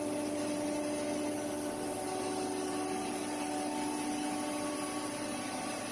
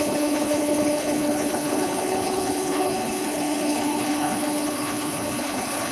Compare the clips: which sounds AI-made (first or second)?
second